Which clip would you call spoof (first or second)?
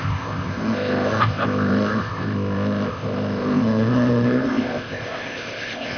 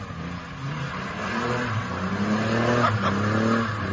first